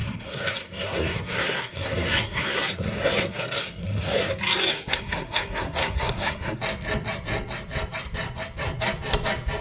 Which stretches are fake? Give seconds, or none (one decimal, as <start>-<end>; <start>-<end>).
0.0-4.3; 4.7-6.6